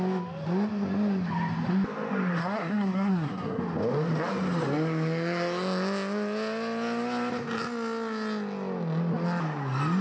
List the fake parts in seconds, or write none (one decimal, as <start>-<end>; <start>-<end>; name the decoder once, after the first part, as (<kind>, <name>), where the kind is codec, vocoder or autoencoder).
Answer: 2.4-3.6 (codec, SNAC)